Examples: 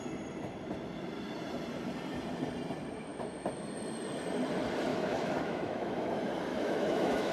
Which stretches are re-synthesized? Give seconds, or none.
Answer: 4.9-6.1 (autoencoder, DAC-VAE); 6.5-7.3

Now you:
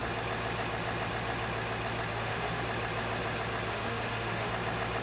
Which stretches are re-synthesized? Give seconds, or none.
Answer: 2.1-2.6 (autoencoder, DAC-VAE); 3.7-4.5

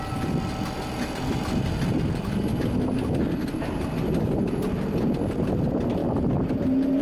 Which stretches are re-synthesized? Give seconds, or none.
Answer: none